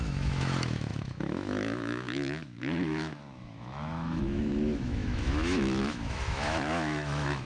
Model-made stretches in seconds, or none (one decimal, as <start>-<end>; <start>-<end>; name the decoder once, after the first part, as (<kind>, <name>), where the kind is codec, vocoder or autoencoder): 0.0-7.4 (autoencoder, DAC-VAE)